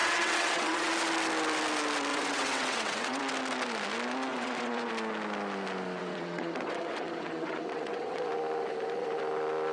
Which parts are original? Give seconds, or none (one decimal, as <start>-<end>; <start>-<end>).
0.9-2.1; 3.2-4.3; 4.9-6.0; 8.2-9.7